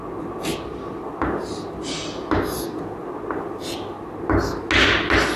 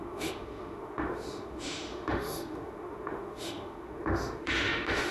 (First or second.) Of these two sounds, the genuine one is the first